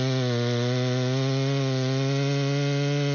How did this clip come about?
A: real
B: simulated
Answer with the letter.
A